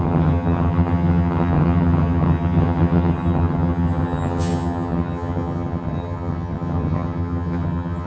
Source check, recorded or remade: remade